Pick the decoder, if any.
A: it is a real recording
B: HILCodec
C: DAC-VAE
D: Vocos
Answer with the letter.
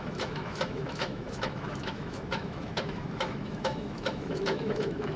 C